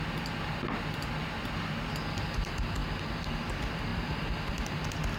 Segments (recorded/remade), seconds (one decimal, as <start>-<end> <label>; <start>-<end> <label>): 0.0-3.9 recorded; 3.9-4.5 remade; 4.5-5.2 recorded